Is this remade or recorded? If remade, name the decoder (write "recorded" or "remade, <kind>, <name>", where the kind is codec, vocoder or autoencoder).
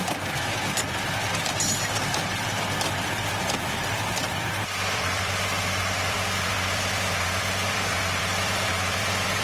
remade, vocoder, BigVGAN v2